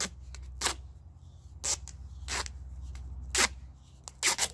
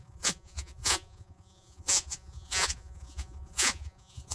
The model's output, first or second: second